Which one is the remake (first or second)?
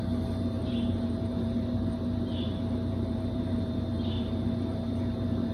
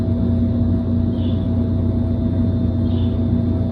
first